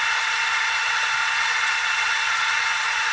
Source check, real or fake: fake